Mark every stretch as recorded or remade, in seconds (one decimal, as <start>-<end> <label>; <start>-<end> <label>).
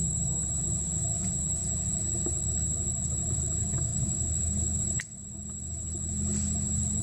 0.0-0.6 remade; 0.6-3.9 recorded; 3.9-5.2 remade; 5.2-7.0 recorded